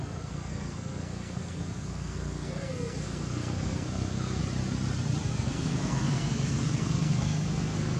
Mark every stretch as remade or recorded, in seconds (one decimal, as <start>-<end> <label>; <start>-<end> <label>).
0.0-4.4 remade; 4.4-5.3 recorded; 5.3-8.0 remade

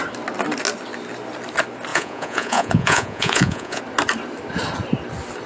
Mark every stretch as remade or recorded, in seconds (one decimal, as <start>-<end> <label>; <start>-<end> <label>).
0.0-1.9 recorded; 1.9-3.8 remade; 3.8-5.5 recorded